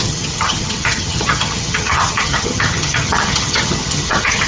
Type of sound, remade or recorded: remade